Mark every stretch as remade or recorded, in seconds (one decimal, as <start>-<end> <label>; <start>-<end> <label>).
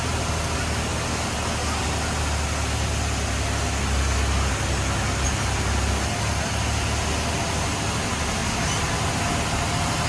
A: 0.0-10.1 recorded